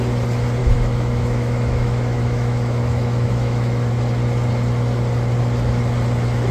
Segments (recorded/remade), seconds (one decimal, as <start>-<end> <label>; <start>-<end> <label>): 0.0-0.6 recorded; 0.6-3.9 remade; 3.9-6.5 recorded

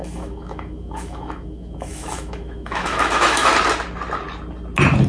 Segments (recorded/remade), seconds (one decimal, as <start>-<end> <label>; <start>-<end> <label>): 0.0-3.5 remade; 3.5-5.1 recorded

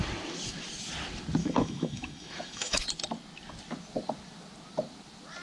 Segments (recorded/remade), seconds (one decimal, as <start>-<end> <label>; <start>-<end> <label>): 0.0-1.4 recorded; 1.4-2.8 remade; 2.8-5.4 recorded

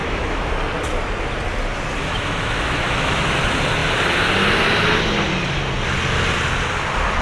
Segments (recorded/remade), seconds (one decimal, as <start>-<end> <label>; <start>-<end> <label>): 0.0-0.5 remade; 0.5-2.0 recorded; 2.0-3.4 remade; 3.4-7.2 recorded